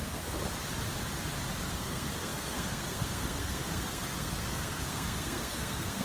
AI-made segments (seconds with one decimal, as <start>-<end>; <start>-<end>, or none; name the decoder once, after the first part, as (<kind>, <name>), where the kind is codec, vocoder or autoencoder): 0.0-0.4 (codec, SNAC); 1.7-6.0

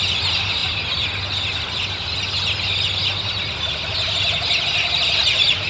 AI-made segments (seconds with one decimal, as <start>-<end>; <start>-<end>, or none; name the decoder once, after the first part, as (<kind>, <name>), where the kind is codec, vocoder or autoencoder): none

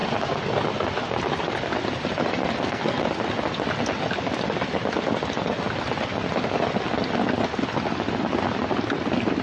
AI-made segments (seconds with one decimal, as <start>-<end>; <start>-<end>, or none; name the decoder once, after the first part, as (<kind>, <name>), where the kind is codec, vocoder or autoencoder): 2.4-3.0 (codec, SNAC)

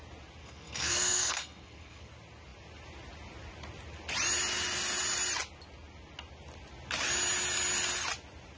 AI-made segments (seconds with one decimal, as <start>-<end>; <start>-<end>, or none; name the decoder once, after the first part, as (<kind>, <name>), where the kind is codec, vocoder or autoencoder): 0.4-2.1 (codec, SNAC)

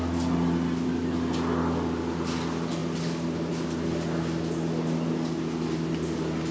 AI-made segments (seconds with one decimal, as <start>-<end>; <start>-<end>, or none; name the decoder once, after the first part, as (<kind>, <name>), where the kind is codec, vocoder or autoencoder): none